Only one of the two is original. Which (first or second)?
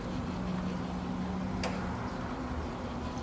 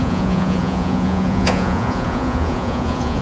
first